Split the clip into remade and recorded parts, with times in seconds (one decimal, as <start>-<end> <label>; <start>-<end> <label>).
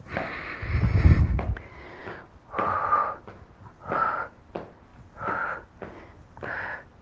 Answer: 0.0-7.0 recorded